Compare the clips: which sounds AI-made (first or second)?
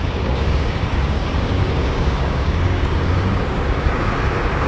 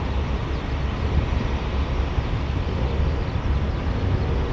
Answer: first